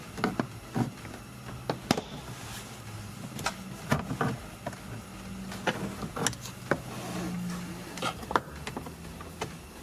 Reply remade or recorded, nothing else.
recorded